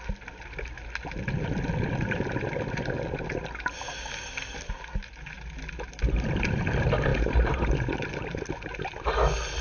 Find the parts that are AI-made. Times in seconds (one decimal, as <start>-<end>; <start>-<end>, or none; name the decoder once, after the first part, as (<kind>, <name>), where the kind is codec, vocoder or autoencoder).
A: none